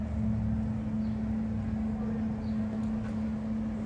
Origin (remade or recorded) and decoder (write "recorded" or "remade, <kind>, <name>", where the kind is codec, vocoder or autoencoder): recorded